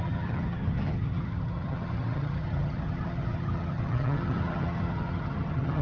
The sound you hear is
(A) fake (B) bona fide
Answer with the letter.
A